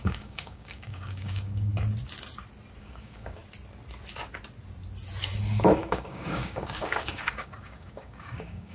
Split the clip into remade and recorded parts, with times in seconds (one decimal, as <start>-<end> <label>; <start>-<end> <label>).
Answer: 0.0-1.7 remade; 1.7-2.8 recorded; 2.8-3.4 remade; 3.4-5.4 recorded; 5.4-8.7 remade